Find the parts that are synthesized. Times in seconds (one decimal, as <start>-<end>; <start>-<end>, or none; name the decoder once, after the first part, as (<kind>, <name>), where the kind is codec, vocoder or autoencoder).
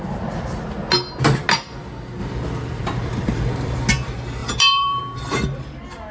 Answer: 2.2-3.9 (vocoder, BigVGAN v2); 4.4-5.0